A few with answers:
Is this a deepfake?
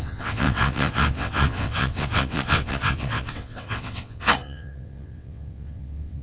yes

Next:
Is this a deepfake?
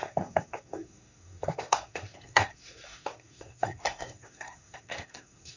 yes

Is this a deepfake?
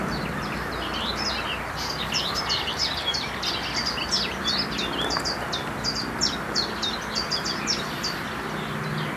no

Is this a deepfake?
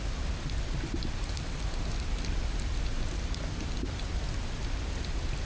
no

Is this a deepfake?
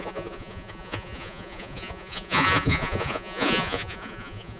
yes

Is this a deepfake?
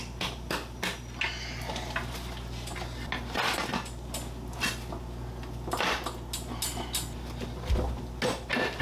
no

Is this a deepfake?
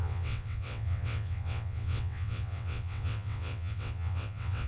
yes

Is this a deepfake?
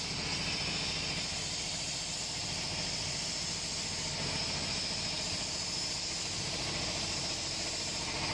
no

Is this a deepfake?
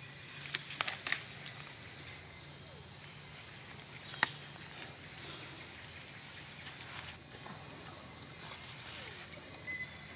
no